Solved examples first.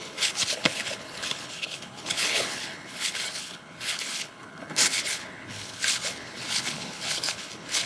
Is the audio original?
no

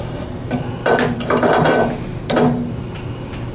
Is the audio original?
yes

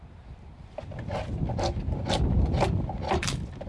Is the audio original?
yes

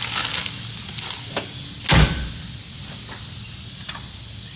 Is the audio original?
yes